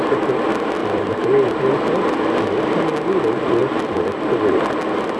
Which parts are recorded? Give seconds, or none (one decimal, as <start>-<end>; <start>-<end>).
0.0-0.8; 2.3-3.6